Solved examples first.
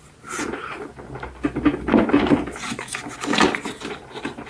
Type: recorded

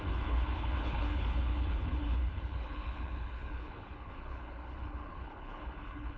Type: remade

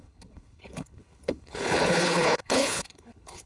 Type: remade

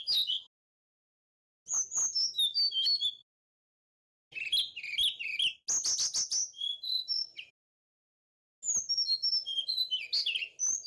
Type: recorded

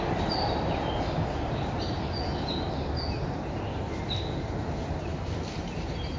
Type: recorded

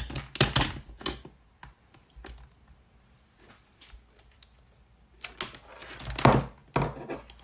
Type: recorded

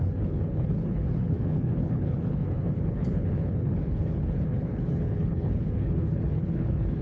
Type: remade